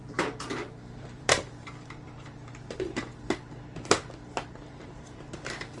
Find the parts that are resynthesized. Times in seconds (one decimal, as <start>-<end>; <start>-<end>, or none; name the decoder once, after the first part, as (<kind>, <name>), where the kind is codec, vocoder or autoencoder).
0.0-3.1 (vocoder, BigVGAN v2); 4.5-5.8